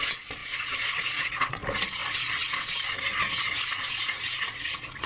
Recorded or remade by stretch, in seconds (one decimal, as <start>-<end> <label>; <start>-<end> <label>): 0.0-5.1 remade